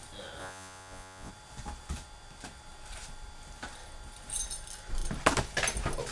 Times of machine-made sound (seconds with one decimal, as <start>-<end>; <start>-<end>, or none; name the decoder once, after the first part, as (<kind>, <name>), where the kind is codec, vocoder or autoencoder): 0.4-1.3 (vocoder, Vocos)